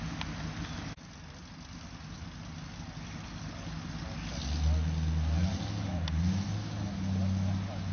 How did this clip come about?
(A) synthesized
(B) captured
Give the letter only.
B